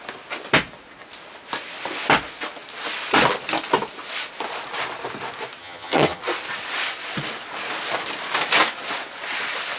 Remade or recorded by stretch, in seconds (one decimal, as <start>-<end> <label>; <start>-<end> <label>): 0.0-5.6 recorded; 5.6-6.2 remade; 6.2-9.8 recorded